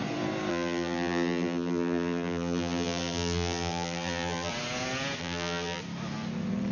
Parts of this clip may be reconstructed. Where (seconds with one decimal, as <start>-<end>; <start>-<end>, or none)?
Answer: 0.5-4.5; 5.2-5.8